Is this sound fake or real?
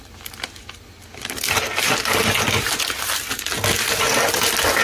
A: real